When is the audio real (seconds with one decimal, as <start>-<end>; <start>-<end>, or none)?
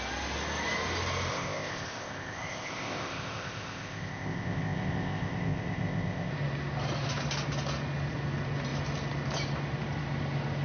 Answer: 0.0-1.3; 6.3-10.6